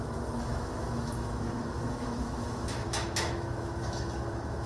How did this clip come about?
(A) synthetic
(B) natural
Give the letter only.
A